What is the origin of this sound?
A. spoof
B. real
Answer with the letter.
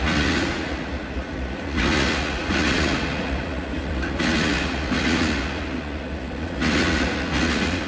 A